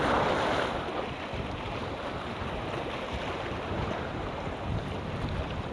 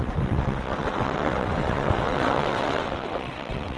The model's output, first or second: second